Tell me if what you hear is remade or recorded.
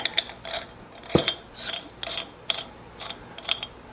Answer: recorded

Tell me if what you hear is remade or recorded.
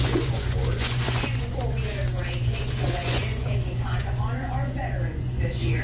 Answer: remade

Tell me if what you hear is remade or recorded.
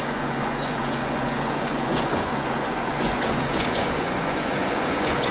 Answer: remade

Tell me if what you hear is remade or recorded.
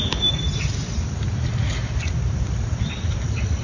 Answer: recorded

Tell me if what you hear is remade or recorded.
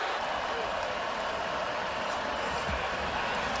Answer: recorded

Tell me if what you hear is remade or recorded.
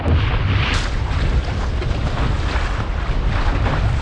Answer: recorded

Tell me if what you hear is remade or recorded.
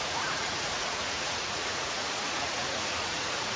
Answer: remade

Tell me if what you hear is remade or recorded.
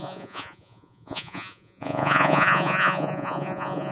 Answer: remade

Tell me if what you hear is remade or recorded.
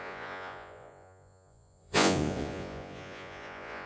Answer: remade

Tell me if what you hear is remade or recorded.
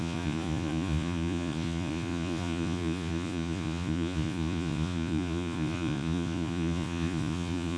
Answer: remade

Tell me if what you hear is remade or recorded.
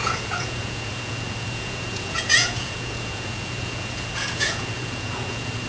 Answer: remade